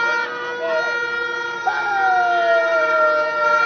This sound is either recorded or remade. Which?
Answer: recorded